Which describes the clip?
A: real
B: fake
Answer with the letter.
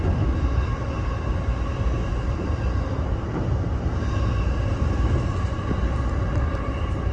A